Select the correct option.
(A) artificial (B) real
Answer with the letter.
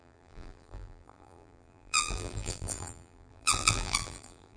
A